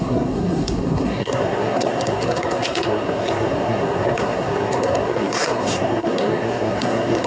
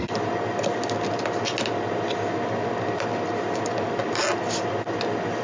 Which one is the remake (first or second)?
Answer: first